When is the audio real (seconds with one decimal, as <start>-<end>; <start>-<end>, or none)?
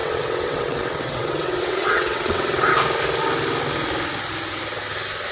2.7-5.3